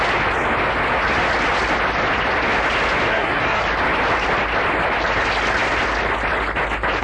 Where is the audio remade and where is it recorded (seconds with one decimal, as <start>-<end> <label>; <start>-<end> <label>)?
0.0-3.1 recorded; 3.1-3.6 remade; 3.6-7.0 recorded